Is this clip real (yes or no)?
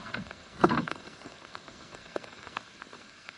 no